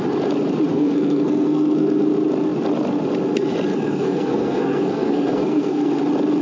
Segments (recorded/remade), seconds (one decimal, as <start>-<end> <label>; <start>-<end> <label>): 0.0-0.7 recorded; 0.7-2.1 remade; 2.1-3.7 recorded; 3.7-6.0 remade; 6.0-6.4 recorded